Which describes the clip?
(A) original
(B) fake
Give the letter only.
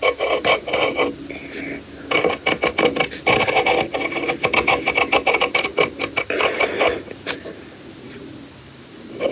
A